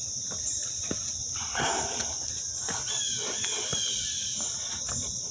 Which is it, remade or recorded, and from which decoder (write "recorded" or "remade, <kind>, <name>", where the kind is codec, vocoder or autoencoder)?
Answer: recorded